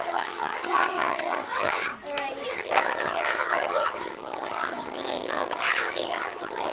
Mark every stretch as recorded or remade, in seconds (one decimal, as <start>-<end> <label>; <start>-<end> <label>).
0.0-1.9 remade; 1.9-2.5 recorded; 2.5-6.7 remade